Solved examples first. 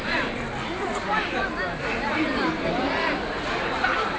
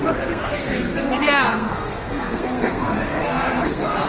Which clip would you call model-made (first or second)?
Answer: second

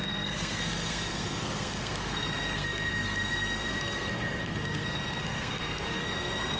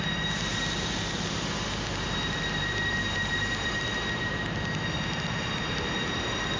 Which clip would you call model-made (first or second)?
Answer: first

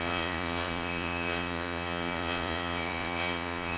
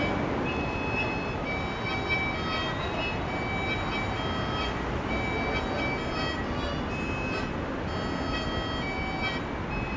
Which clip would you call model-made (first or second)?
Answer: first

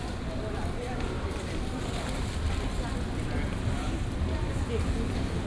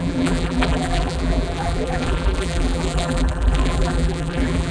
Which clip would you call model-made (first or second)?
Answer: second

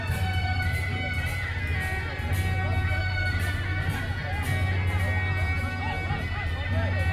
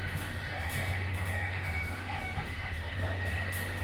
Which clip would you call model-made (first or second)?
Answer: second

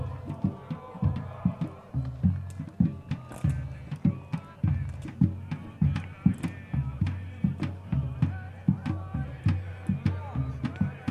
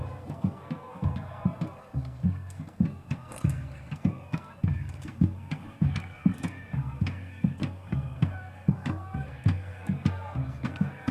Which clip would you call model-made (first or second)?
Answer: second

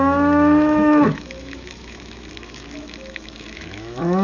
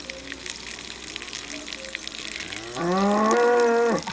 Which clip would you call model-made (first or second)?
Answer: first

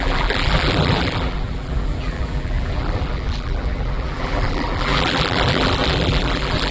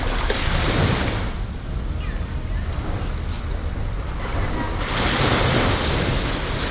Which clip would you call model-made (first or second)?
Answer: first